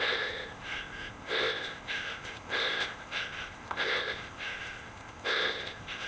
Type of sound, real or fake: fake